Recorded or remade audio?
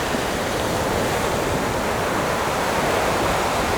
recorded